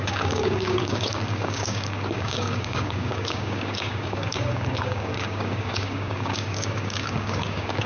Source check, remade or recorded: remade